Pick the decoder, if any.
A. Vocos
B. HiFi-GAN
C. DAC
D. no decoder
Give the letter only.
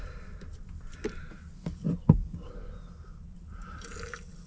D